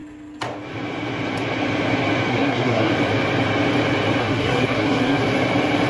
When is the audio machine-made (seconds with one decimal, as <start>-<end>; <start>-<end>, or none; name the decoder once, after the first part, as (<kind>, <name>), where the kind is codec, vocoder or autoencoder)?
2.3-2.9 (codec, SNAC); 4.2-5.2